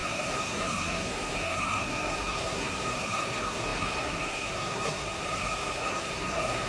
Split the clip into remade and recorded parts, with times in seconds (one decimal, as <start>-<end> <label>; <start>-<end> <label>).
0.0-6.7 remade